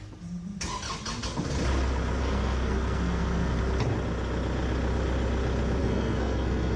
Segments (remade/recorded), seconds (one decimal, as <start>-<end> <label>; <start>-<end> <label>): 0.0-2.2 recorded; 2.2-3.6 remade; 3.6-5.8 recorded; 5.8-6.8 remade